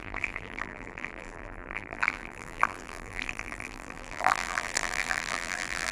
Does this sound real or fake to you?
fake